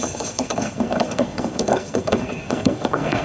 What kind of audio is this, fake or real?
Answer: fake